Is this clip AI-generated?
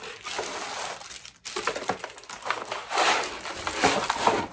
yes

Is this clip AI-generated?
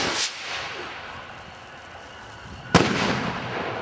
no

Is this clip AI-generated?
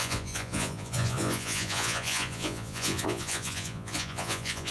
yes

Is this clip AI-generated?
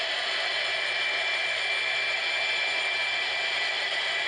no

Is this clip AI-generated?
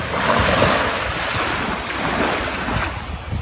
no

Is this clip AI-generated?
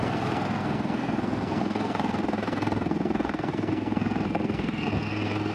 yes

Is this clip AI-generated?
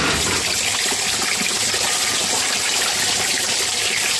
yes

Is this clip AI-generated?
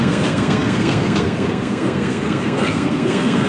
yes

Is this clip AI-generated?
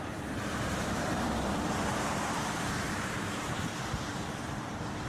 yes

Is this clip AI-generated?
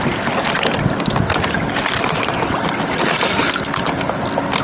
no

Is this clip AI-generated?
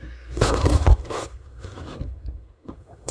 yes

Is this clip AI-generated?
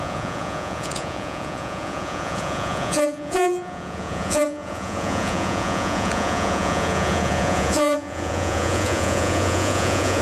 yes